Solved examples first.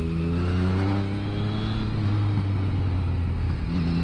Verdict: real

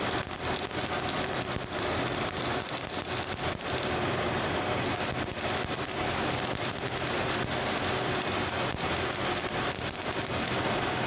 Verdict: real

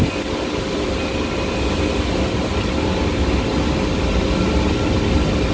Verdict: real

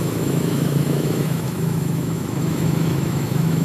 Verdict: fake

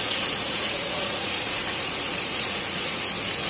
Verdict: fake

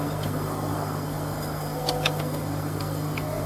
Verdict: fake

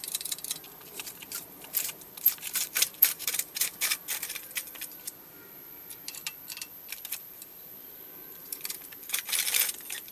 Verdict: fake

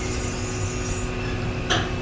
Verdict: real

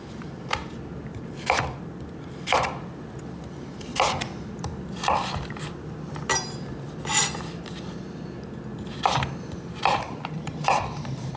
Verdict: fake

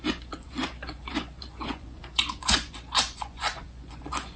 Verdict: fake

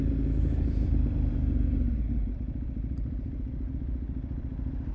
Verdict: fake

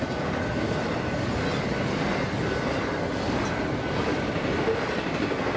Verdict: real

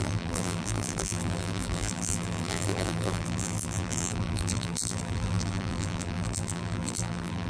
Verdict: fake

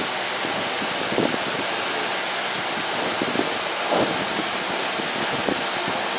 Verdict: real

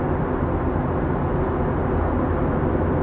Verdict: real